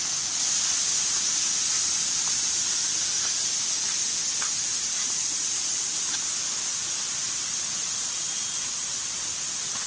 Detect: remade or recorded recorded